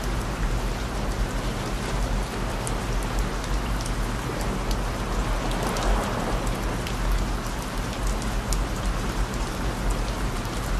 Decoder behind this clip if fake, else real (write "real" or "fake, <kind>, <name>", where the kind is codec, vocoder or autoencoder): real